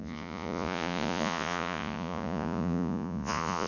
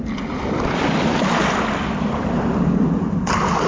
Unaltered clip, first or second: second